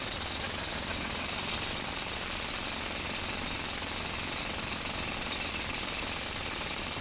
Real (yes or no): yes